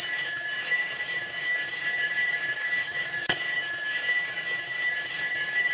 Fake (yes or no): yes